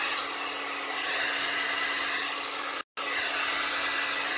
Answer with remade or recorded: recorded